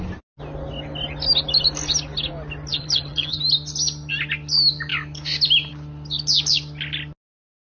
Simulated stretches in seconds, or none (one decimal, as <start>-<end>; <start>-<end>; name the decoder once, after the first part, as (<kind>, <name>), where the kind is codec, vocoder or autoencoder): 2.7-3.4 (vocoder, HiFi-GAN)